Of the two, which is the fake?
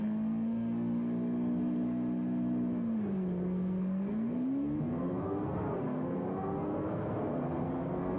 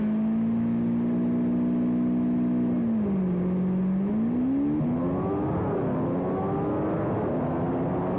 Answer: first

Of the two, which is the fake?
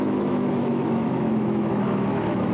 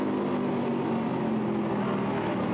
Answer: first